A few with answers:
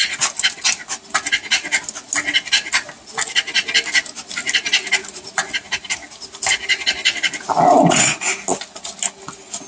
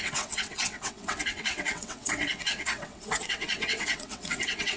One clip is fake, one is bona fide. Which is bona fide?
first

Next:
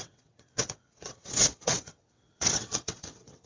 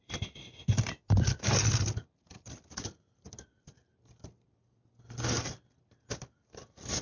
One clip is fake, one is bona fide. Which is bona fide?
second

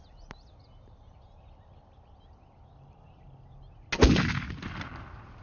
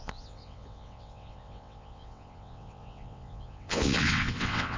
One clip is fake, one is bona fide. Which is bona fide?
first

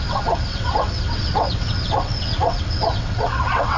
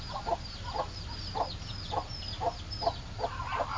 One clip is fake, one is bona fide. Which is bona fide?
second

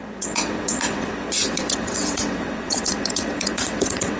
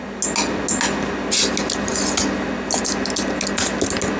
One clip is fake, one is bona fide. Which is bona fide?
second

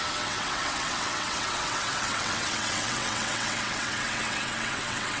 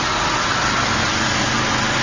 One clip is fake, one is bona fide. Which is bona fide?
second